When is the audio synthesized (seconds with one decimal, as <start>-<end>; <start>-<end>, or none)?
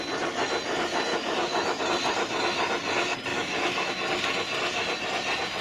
1.1-1.8; 3.3-3.9